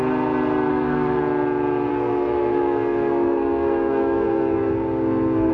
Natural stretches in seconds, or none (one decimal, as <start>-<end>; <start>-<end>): 0.0-0.7; 1.2-1.9